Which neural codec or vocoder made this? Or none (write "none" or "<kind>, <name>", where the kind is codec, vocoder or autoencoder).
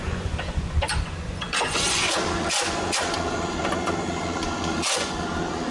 vocoder, Vocos